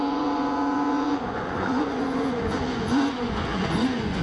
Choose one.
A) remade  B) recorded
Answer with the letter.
A